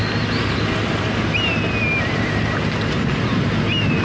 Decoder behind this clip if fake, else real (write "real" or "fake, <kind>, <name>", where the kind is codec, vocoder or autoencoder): real